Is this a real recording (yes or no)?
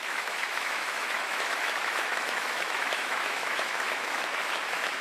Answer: no